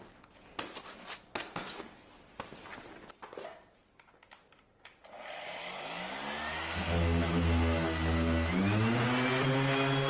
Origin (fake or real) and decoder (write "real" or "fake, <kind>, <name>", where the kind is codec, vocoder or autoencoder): real